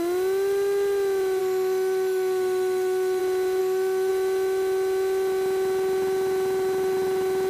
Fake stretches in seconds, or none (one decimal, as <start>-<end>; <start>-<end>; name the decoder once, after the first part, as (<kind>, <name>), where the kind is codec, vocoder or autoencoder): 1.4-3.2 (autoencoder, DAC-VAE); 3.6-4.1